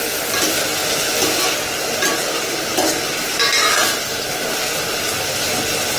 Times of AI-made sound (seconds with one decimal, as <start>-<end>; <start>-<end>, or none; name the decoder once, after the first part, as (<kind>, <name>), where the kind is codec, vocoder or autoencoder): none

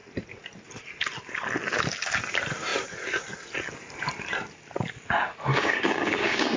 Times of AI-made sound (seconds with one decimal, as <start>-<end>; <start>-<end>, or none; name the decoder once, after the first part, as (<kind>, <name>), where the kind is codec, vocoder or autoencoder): 5.5-6.6 (codec, DAC)

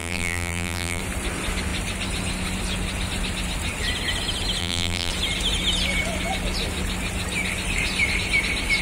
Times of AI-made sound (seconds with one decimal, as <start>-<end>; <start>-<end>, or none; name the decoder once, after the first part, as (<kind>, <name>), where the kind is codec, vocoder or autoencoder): 0.0-1.0 (vocoder, BigVGAN v2); 4.6-5.1

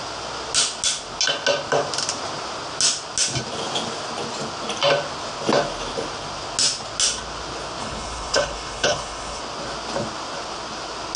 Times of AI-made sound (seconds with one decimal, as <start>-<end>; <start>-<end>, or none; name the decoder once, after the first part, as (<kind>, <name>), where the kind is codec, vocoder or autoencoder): 7.8-9.4 (codec, HILCodec)

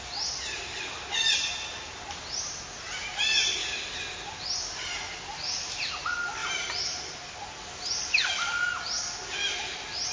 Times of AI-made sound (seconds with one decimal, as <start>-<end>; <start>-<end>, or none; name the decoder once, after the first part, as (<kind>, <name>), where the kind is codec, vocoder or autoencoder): none